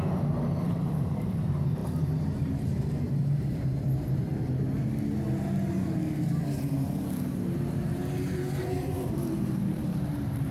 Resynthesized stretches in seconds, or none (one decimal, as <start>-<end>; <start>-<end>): 0.0-4.3; 8.6-10.5